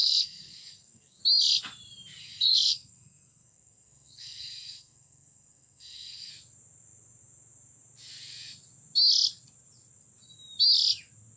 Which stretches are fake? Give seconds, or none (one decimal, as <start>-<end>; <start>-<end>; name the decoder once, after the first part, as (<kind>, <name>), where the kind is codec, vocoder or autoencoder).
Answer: 0.0-1.2 (codec, SNAC); 2.2-6.3